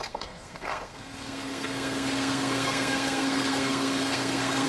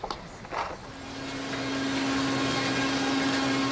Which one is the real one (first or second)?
second